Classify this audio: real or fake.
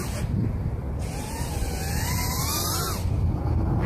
real